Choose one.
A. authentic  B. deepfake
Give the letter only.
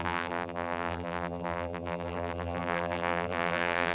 B